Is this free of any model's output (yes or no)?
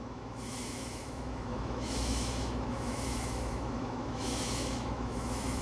no